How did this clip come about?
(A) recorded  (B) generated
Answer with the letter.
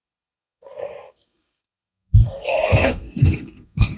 B